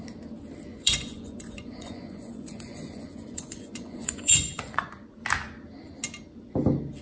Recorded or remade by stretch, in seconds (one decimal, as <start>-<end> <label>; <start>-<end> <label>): 0.0-0.7 recorded; 0.7-4.9 remade; 4.9-7.0 recorded